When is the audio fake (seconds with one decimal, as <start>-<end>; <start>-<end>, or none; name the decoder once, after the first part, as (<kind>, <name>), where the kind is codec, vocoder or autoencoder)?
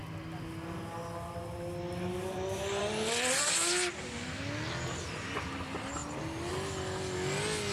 none